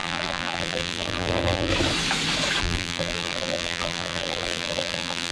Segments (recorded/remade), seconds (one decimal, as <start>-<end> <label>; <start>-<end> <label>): 0.0-1.7 remade; 1.7-2.6 recorded; 2.6-5.3 remade